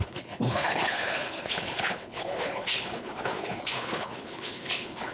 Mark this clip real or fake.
fake